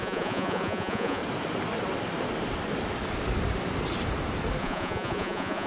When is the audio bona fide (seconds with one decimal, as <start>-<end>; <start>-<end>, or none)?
1.2-4.6